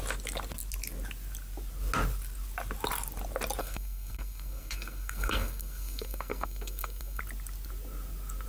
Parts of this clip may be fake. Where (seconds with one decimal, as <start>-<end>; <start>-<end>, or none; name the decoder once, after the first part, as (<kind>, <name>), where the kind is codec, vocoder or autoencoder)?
3.6-7.2 (codec, SNAC)